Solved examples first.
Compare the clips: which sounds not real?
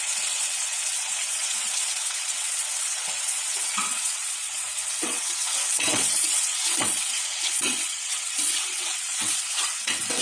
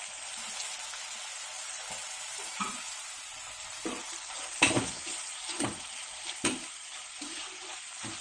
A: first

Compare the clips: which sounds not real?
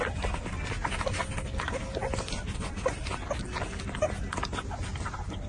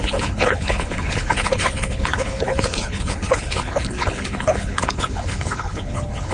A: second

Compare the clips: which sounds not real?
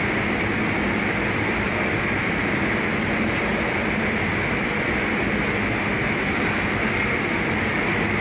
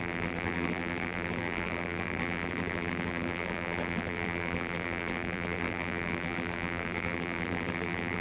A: second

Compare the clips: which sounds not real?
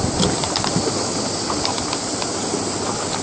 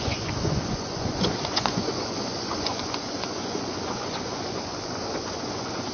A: second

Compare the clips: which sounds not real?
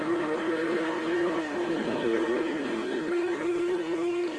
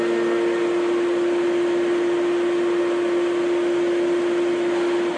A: first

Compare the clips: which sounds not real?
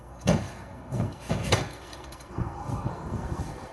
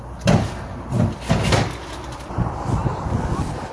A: first